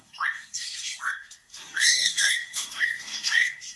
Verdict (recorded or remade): remade